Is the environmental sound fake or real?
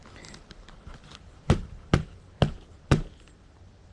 real